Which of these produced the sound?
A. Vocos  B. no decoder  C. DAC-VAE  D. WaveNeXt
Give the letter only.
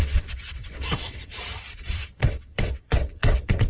D